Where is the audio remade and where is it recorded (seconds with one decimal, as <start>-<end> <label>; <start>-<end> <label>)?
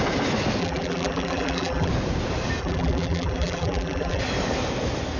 0.0-0.6 recorded; 0.6-1.9 remade; 1.9-2.6 recorded; 2.6-4.2 remade; 4.2-5.2 recorded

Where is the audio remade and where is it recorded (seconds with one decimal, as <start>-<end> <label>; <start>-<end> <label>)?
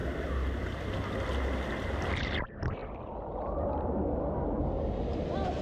0.0-0.9 remade; 0.9-2.8 recorded; 2.8-4.6 remade; 4.6-5.6 recorded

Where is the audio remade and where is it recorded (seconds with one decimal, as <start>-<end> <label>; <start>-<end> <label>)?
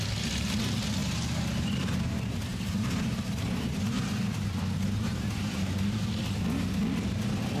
0.0-1.0 recorded; 1.0-1.9 remade; 1.9-2.5 recorded; 2.5-6.2 remade; 6.2-7.6 recorded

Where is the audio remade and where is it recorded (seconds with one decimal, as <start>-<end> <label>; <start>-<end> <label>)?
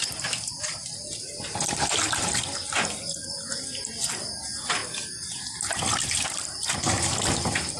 0.0-4.8 recorded; 4.8-5.4 remade; 5.4-7.8 recorded